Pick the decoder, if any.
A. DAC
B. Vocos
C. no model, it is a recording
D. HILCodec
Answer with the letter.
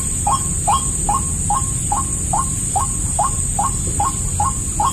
C